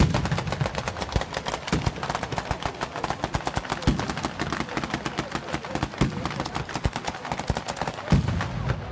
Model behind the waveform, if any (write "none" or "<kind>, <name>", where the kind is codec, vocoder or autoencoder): none